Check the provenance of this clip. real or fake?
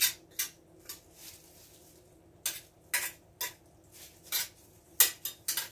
real